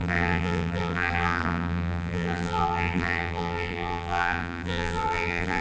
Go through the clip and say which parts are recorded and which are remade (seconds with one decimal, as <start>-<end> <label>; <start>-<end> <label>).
0.0-5.6 remade